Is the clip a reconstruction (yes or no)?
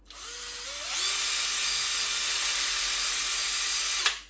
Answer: no